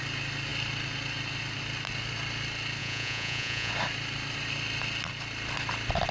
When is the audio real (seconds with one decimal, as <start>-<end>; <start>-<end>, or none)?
0.0-2.8; 3.7-6.1